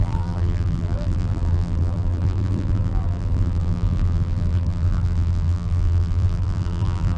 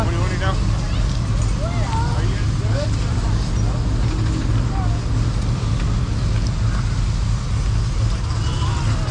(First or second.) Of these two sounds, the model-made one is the first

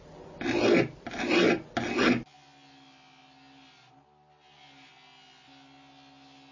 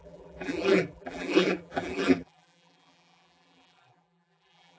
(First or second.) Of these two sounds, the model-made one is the second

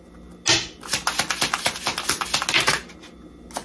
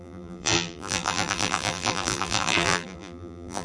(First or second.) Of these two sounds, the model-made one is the second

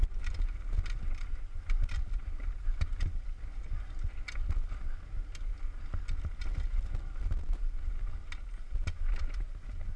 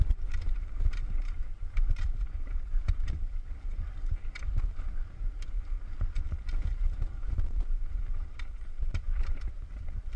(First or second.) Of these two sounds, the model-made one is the second